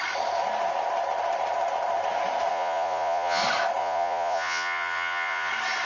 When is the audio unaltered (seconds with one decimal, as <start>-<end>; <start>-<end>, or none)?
0.0-2.5; 3.4-3.8; 5.5-5.9

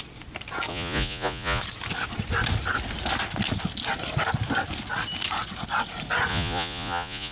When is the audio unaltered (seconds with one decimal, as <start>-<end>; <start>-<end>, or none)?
0.0-0.7; 1.6-6.3